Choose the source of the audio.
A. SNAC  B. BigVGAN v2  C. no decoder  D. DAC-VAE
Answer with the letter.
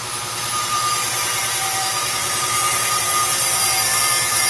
B